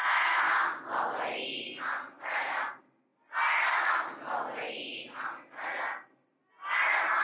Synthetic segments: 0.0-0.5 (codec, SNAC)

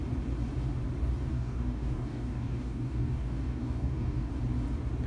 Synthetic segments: 1.2-4.3 (codec, DAC)

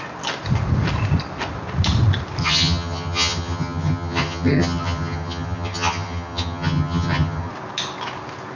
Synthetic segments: 2.4-7.5 (vocoder, HiFi-GAN)